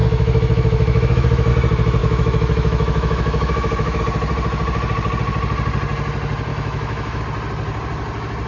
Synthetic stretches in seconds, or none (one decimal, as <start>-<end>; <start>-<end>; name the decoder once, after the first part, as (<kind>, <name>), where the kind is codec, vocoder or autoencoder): 0.0-1.5 (autoencoder, DAC-VAE); 2.0-4.0; 6.5-7.2